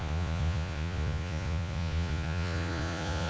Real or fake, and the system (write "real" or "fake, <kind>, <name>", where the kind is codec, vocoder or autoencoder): fake, vocoder, Vocos